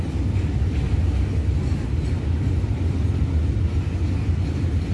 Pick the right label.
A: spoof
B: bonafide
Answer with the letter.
B